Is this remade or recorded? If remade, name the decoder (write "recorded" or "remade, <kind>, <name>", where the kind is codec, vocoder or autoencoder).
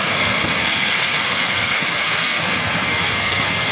remade, codec, SNAC